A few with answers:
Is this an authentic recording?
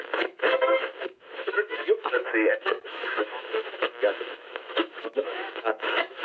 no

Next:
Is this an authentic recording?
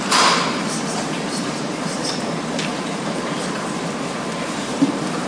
no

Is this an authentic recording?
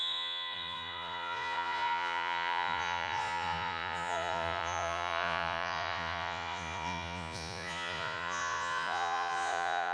no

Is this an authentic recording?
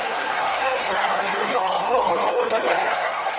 no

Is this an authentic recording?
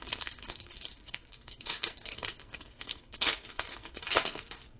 no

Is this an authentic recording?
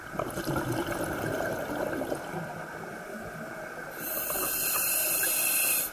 yes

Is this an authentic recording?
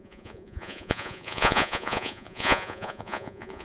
no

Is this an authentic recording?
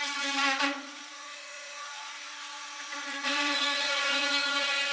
no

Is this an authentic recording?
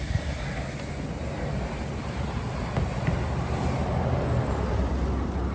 yes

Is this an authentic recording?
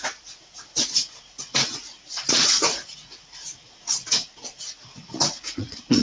no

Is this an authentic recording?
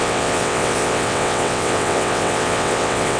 no